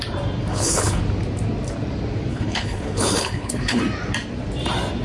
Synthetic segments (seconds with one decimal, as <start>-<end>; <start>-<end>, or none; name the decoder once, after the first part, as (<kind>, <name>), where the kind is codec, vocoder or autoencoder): 0.5-1.0 (codec, HILCodec); 2.3-3.8